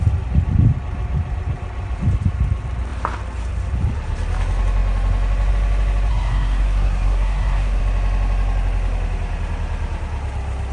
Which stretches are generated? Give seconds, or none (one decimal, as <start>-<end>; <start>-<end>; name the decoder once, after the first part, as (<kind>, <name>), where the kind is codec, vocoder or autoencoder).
6.1-7.8 (codec, SNAC)